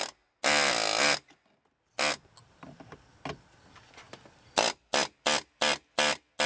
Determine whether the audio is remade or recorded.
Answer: recorded